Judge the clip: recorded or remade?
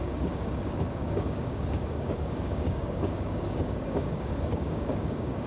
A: remade